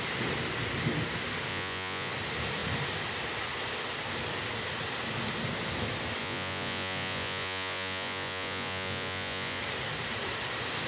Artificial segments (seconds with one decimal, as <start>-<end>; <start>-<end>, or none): 1.5-2.1; 6.2-9.6